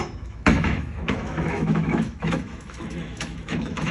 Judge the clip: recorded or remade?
remade